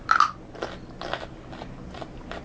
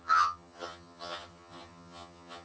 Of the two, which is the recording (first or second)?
first